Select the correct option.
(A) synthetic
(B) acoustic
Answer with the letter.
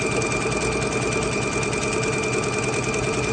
B